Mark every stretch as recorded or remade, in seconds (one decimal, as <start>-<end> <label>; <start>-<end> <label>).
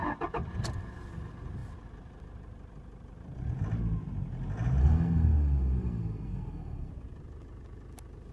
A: 0.0-4.8 recorded; 4.8-6.9 remade; 6.9-8.3 recorded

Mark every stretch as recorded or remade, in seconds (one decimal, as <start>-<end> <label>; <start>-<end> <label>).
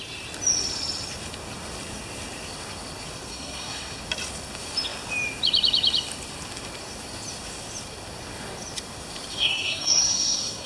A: 0.0-3.3 recorded; 3.3-4.0 remade; 4.0-9.3 recorded; 9.3-10.7 remade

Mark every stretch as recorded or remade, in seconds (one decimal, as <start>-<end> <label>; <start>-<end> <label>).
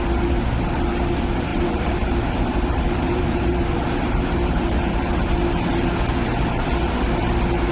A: 0.0-1.5 recorded; 1.5-5.1 remade; 5.1-7.7 recorded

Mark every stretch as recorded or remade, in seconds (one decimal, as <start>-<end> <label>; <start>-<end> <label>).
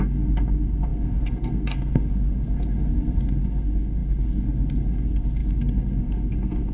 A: 0.0-6.7 remade